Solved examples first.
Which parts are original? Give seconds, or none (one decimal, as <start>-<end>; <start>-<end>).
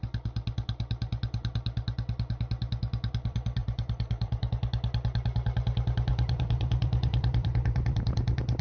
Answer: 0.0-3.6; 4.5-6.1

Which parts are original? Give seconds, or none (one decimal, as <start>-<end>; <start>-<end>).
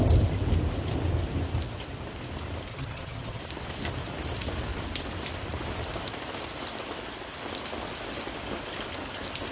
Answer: 0.0-2.7; 3.4-9.5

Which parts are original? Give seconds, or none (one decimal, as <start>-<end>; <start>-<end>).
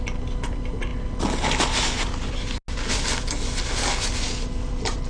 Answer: 0.0-5.1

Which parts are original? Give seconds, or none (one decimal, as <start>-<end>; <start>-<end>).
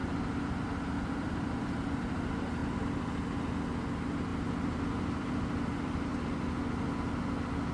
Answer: 2.6-3.8; 6.1-7.7